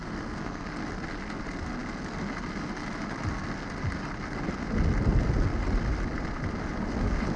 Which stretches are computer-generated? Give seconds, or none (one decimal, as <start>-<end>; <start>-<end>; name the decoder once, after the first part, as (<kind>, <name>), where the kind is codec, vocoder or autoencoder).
0.0-0.7 (codec, SNAC)